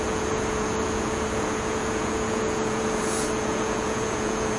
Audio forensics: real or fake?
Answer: fake